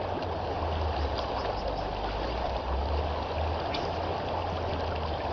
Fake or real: real